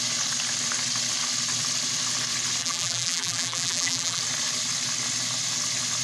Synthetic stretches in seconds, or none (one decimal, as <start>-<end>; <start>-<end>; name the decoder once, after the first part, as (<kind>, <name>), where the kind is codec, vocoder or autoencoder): 2.6-4.2 (vocoder, BigVGAN v2)